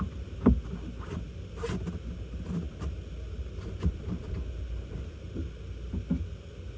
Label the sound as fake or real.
real